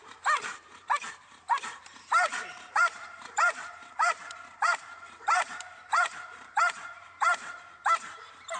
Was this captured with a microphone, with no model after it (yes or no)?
no